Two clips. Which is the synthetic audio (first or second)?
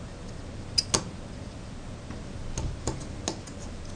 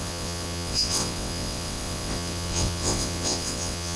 second